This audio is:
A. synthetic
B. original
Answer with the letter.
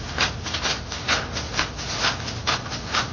B